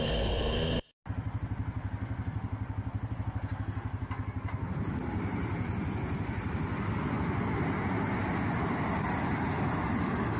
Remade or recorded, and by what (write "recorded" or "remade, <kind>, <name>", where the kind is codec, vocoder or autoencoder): recorded